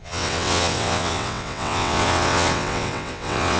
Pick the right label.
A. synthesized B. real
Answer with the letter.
A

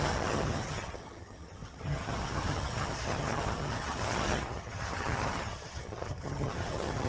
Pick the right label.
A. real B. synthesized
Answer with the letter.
B